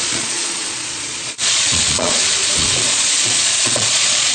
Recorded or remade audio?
remade